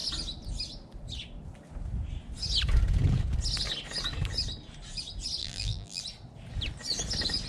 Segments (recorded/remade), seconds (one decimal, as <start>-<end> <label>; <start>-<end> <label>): 0.0-5.4 recorded; 5.4-6.0 remade; 6.0-7.5 recorded